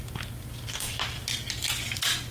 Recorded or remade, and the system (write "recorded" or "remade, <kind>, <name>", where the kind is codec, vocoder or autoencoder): recorded